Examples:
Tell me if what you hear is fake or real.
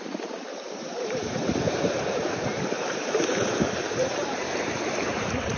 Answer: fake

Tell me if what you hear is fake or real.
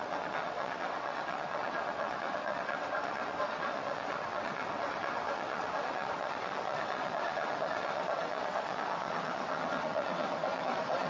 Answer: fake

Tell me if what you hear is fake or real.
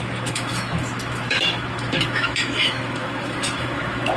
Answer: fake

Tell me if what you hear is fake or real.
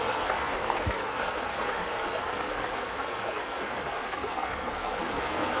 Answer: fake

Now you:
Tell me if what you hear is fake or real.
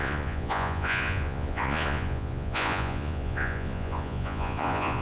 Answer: fake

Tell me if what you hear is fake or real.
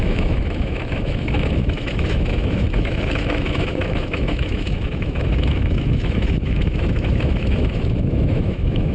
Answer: fake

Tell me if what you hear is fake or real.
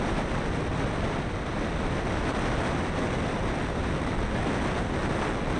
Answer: real